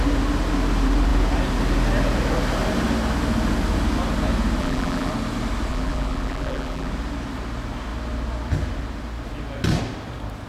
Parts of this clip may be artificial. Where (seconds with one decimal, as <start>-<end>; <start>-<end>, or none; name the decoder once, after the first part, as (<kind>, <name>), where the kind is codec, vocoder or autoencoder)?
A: 4.6-5.1 (vocoder, BigVGAN v2); 5.7-6.9